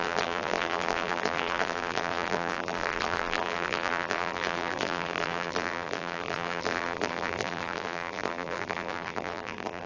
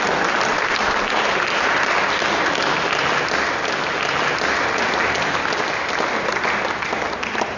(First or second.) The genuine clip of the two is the second